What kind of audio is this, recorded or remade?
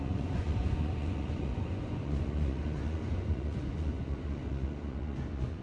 remade